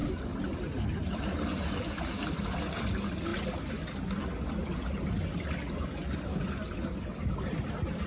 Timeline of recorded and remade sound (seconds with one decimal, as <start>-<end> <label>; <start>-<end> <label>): 0.0-8.1 recorded